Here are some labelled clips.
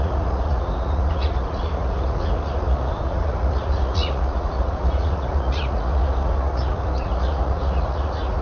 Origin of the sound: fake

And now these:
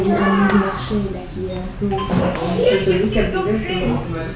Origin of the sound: real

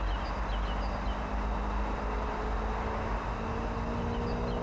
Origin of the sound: real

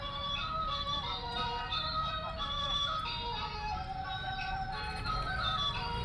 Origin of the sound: real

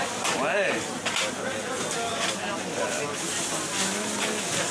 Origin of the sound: real